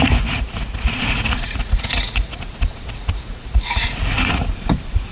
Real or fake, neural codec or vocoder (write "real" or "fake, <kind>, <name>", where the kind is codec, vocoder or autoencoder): fake, vocoder, Vocos